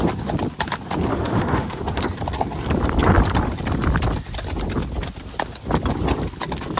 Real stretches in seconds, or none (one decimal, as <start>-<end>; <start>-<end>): 0.0-1.1; 1.8-6.8